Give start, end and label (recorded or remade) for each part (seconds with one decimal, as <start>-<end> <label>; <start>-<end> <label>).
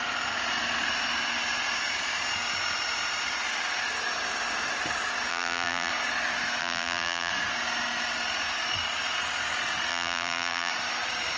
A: 0.0-5.3 recorded; 5.3-5.9 remade; 5.9-6.6 recorded; 6.6-7.3 remade; 7.3-9.9 recorded; 9.9-10.7 remade; 10.7-11.4 recorded